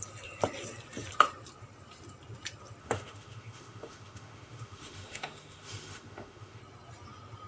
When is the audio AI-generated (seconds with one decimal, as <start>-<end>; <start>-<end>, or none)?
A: 2.8-6.6